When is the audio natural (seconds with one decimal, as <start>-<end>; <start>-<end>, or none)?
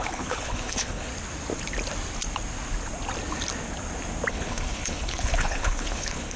1.1-4.3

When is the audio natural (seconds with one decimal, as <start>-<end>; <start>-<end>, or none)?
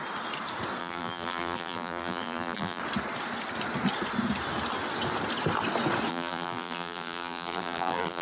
0.0-0.8; 2.8-6.1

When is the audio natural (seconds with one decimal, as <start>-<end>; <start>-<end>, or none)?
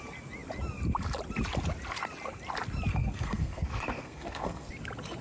0.0-2.9; 4.7-5.2